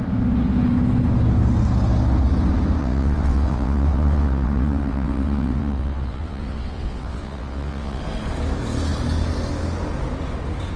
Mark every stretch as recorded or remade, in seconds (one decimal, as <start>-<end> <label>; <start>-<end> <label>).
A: 0.0-2.8 recorded; 2.8-8.0 remade; 8.0-10.8 recorded